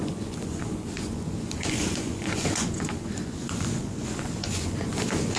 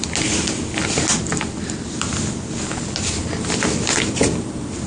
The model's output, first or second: first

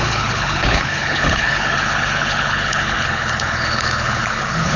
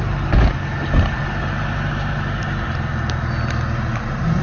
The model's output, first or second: first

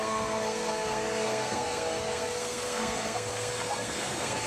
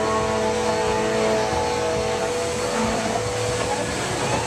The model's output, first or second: first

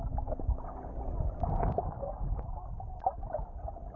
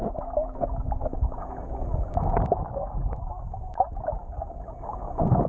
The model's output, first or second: second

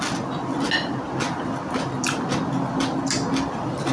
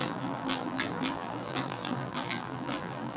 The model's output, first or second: second